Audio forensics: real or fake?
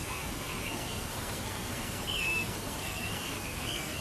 fake